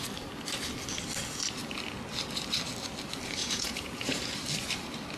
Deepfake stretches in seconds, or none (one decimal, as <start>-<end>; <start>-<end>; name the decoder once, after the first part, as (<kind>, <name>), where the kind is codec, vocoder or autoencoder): 3.4-4.2 (vocoder, Vocos)